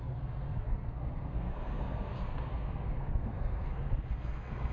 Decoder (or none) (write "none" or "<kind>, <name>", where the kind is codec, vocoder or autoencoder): codec, SNAC